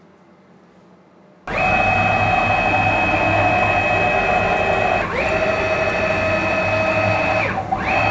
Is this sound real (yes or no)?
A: yes